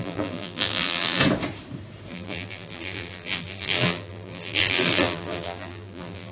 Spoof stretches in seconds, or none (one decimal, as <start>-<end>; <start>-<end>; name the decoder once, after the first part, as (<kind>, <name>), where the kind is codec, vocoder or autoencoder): 0.0-1.2 (vocoder, BigVGAN v2); 2.1-6.3